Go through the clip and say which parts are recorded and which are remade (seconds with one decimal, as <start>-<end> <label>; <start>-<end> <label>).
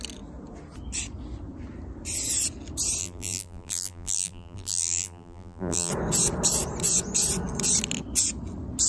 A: 0.0-3.0 recorded; 3.0-5.9 remade; 5.9-8.9 recorded